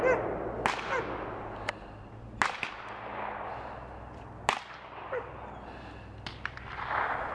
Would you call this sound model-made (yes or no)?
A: no